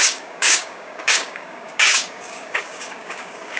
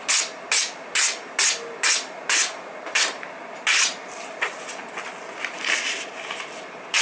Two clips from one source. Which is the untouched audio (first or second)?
second